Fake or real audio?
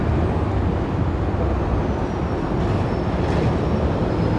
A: real